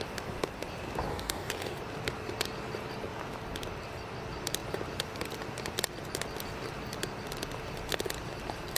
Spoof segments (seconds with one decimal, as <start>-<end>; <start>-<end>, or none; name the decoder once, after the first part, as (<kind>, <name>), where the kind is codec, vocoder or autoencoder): 1.1-1.8 (codec, DAC)